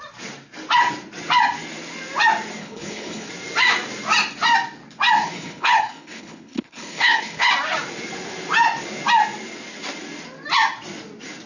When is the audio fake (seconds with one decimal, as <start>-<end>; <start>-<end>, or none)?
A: 2.6-3.3; 5.2-7.5